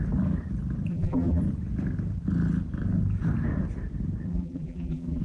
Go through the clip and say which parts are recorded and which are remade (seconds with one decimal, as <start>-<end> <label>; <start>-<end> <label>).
0.0-0.9 recorded; 0.9-1.4 remade; 1.4-4.3 recorded; 4.3-5.2 remade